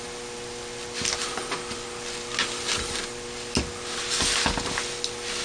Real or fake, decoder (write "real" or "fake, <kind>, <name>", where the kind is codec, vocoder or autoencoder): real